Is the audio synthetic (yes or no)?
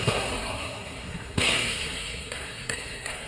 yes